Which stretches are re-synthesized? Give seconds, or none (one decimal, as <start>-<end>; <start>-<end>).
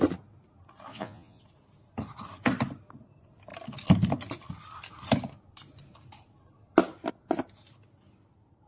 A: 0.9-1.4